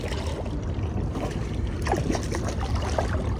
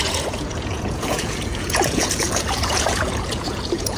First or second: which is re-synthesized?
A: second